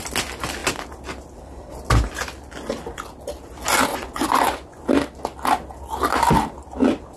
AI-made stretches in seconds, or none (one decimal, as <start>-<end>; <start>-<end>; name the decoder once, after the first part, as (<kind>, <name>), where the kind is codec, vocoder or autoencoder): 3.9-4.8 (vocoder, Vocos)